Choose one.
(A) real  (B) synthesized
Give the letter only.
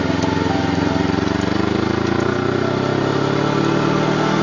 A